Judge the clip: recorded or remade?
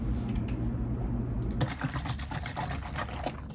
recorded